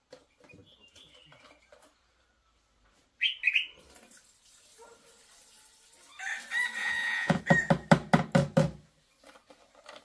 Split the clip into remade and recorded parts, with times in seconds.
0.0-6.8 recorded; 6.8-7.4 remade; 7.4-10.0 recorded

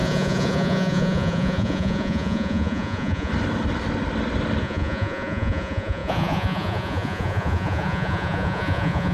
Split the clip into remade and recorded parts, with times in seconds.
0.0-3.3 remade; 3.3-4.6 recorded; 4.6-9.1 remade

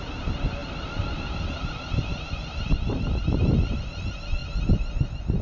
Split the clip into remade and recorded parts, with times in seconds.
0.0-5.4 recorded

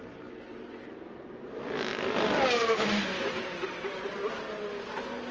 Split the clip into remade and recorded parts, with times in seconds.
0.0-5.3 recorded

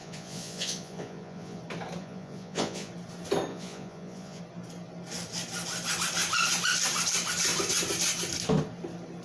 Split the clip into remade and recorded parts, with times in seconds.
0.0-1.6 remade; 1.6-2.0 recorded; 2.0-2.9 remade; 2.9-3.5 recorded; 3.5-4.4 remade; 4.4-9.2 recorded

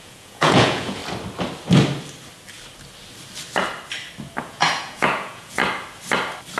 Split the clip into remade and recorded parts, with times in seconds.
0.0-1.0 remade; 1.0-4.4 recorded; 4.4-5.6 remade; 5.6-6.6 recorded

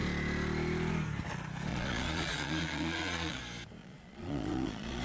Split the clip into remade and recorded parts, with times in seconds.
0.0-1.7 recorded; 1.7-3.4 remade; 3.4-3.8 recorded; 3.8-5.0 remade

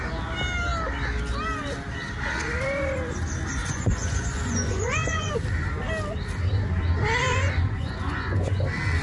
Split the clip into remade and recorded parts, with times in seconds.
0.0-3.6 recorded; 3.6-5.3 remade; 5.3-7.3 recorded; 7.3-8.6 remade; 8.6-9.0 recorded